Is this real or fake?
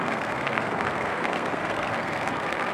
fake